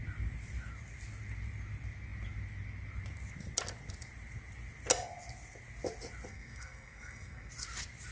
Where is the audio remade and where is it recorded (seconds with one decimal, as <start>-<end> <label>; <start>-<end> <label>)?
0.0-6.3 recorded; 6.3-7.5 remade; 7.5-8.1 recorded